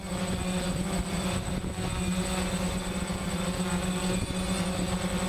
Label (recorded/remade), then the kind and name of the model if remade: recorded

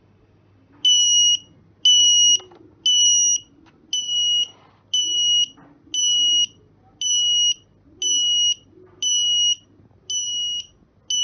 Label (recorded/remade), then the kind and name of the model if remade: recorded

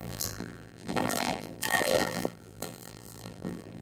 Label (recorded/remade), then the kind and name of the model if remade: remade, vocoder, BigVGAN v2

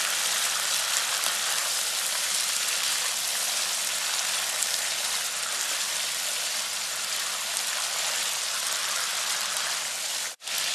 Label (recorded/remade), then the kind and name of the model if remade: remade, vocoder, BigVGAN v2